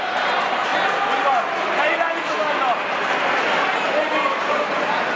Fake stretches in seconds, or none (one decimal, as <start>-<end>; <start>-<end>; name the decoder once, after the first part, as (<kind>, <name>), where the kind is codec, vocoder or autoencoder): 0.0-0.7 (vocoder, BigVGAN v2); 3.8-5.2